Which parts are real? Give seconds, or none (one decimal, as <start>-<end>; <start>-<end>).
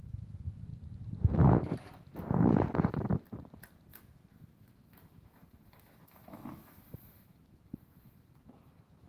0.7-3.9